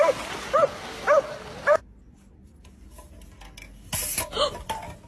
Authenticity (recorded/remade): recorded